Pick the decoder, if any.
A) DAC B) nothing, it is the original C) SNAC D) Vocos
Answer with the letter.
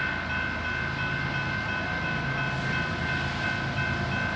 B